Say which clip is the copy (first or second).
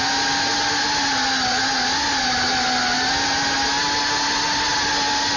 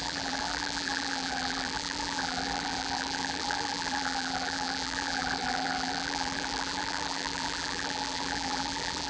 second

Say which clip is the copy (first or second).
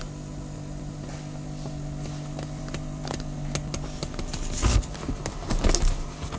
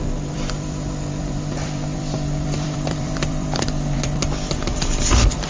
second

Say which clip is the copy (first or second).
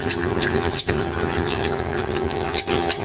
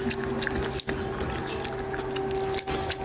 first